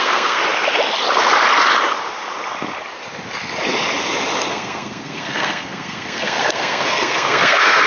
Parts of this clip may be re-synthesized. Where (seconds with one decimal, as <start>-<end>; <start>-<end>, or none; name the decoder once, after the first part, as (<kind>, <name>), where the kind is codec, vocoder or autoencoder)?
0.0-0.4 (codec, SNAC); 4.5-7.9